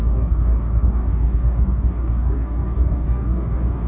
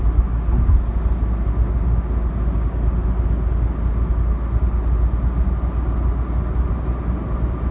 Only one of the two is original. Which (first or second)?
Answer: second